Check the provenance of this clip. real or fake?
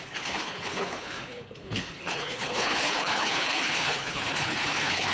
fake